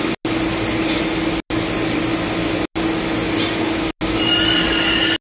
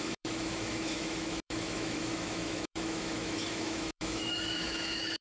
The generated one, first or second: second